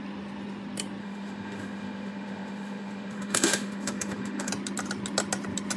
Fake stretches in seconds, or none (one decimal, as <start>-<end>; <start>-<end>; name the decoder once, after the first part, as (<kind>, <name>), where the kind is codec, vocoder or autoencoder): 1.0-4.5 (autoencoder, DAC-VAE)